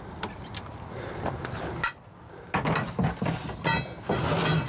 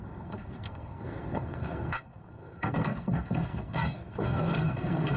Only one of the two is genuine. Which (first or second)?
first